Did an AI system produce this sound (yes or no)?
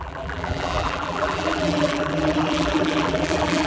yes